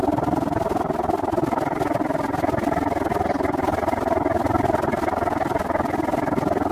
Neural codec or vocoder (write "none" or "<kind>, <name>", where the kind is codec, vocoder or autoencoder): none